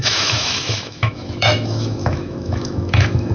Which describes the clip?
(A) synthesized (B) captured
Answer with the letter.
A